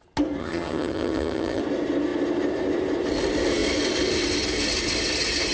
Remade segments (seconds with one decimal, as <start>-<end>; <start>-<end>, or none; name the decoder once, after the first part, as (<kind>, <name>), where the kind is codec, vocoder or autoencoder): 0.4-1.6 (vocoder, HiFi-GAN)